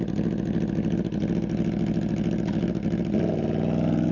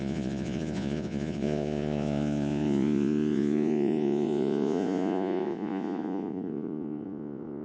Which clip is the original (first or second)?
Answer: first